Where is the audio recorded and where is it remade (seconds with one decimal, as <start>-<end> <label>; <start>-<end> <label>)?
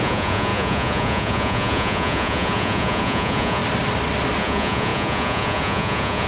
0.0-3.6 remade; 3.6-4.4 recorded; 4.4-6.3 remade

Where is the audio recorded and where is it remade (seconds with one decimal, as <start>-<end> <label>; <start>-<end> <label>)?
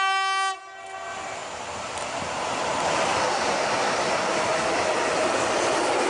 0.0-6.1 recorded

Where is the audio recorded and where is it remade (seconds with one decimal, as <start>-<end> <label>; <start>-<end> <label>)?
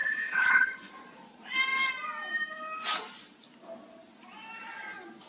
0.0-0.9 remade; 0.9-5.3 recorded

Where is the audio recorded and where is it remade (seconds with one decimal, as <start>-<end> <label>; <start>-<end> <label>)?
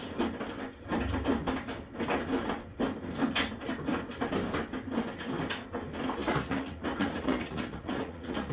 0.0-6.2 recorded; 6.2-8.5 remade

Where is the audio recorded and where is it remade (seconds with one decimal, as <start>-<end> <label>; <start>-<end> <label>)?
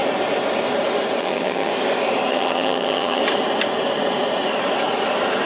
0.0-1.2 recorded; 1.2-1.7 remade; 1.7-2.3 recorded; 2.3-3.2 remade; 3.2-5.5 recorded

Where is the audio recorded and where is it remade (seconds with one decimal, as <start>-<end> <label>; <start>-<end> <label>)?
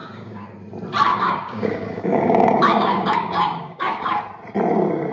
0.0-0.5 remade; 0.5-1.1 recorded; 1.1-4.2 remade; 4.2-5.1 recorded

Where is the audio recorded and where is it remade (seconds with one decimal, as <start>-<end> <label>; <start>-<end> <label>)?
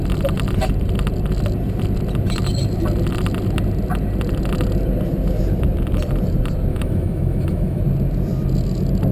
0.0-6.7 recorded; 6.7-7.8 remade; 7.8-9.1 recorded